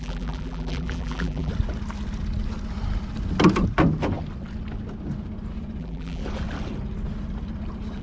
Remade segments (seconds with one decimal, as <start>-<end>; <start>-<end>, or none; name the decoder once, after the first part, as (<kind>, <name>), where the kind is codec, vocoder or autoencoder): 0.0-1.5 (vocoder, BigVGAN v2); 5.8-6.2